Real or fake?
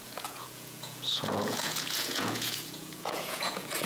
fake